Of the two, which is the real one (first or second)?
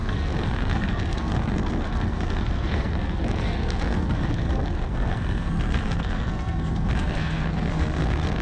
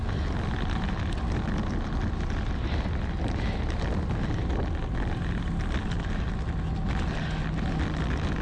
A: second